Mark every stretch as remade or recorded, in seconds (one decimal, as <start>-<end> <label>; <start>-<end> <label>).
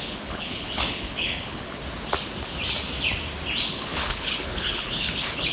0.0-1.8 remade; 1.8-3.7 recorded; 3.7-5.5 remade